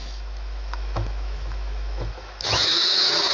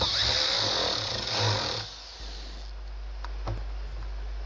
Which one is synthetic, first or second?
first